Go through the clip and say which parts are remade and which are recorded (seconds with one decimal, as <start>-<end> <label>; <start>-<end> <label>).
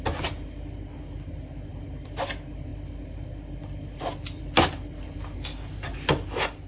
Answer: 0.0-6.7 recorded